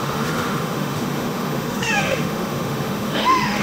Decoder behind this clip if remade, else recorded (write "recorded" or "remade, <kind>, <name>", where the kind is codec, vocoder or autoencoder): remade, autoencoder, DAC-VAE